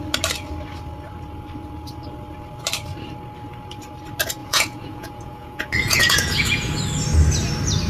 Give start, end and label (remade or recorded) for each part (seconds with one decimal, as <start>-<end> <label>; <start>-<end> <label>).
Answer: 0.0-4.4 recorded; 4.4-6.8 remade; 6.8-7.9 recorded